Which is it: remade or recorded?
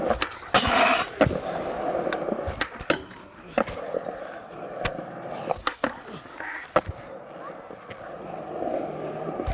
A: recorded